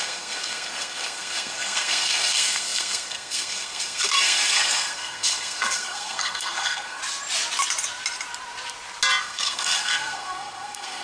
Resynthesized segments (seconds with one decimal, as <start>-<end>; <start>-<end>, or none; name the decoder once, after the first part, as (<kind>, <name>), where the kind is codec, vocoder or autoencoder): 0.0-7.0 (codec, SNAC); 9.2-11.0